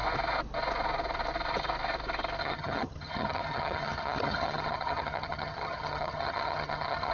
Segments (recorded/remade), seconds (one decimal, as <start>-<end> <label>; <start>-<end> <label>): 0.0-2.4 recorded; 2.4-7.1 remade